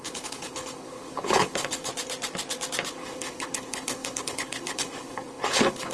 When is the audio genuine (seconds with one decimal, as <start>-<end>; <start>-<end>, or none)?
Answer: 1.9-2.9